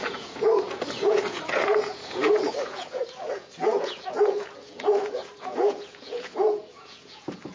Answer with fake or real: fake